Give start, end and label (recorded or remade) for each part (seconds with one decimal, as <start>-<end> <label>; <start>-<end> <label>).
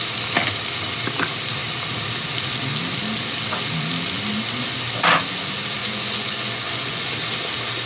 0.0-5.8 recorded; 5.8-7.1 remade; 7.1-7.9 recorded